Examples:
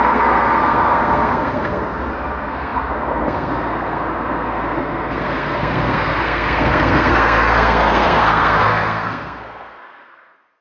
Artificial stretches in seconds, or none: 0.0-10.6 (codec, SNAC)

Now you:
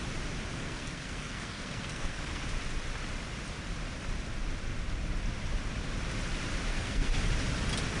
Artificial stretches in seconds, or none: 0.5-2.4 (codec, SNAC); 6.7-7.3

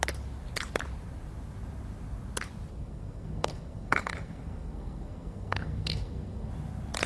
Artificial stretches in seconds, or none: 2.7-6.5 (codec, SNAC)

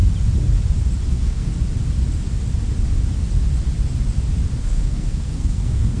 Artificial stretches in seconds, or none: 1.1-1.5 (codec, SNAC); 4.6-6.0

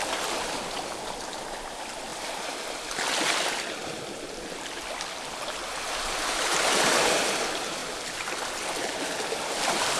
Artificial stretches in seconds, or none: none